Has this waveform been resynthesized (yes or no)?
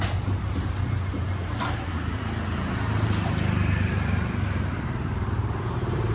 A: yes